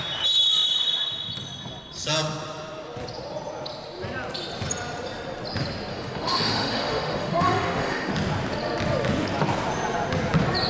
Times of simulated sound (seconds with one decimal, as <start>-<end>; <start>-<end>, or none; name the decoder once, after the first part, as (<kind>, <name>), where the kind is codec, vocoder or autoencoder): 5.9-8.1 (autoencoder, DAC-VAE)